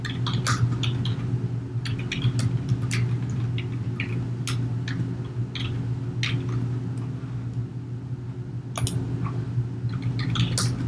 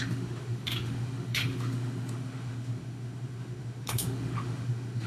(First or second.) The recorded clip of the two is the first